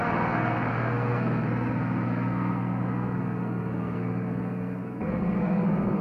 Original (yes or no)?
no